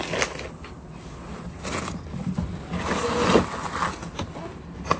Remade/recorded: recorded